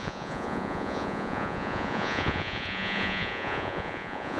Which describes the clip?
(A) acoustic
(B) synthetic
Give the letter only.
B